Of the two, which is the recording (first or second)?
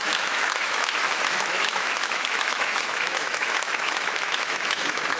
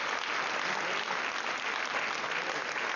second